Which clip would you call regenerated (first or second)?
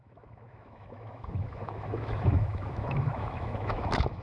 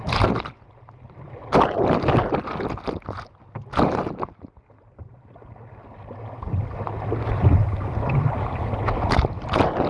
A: first